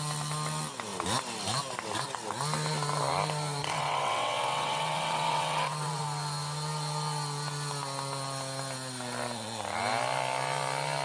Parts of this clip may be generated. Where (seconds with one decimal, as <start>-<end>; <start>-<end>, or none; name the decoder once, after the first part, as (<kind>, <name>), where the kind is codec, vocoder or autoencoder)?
3.6-6.0 (vocoder, WaveNeXt)